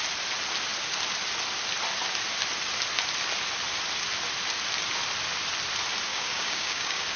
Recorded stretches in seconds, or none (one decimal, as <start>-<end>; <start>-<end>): 0.0-6.1